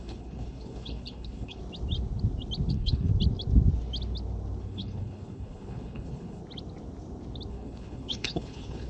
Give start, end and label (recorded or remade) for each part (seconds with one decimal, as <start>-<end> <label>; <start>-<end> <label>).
0.0-1.6 remade; 1.6-2.7 recorded; 2.7-3.1 remade; 3.1-4.6 recorded; 4.6-6.4 remade; 6.4-7.5 recorded; 7.5-8.9 remade